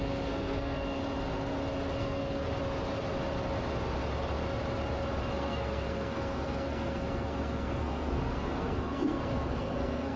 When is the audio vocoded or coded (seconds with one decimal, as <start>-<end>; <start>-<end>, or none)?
0.0-1.0; 2.0-2.4; 5.3-10.2